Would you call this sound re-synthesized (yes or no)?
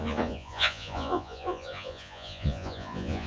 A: yes